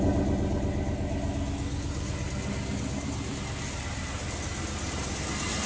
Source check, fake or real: real